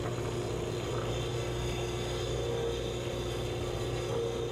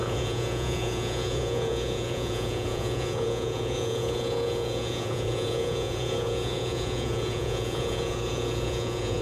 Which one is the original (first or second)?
first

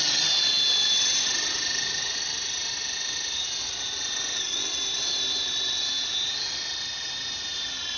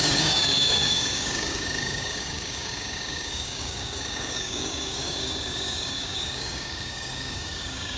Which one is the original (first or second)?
first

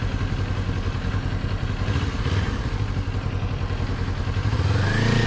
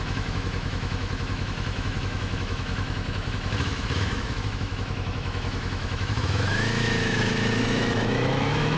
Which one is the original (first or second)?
first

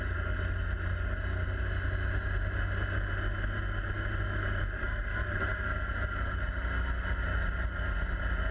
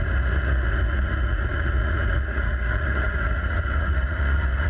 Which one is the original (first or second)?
first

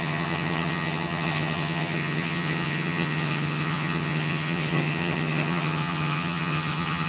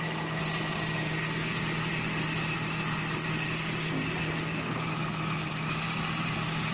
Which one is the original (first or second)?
second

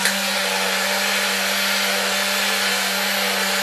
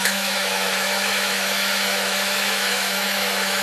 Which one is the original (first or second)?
first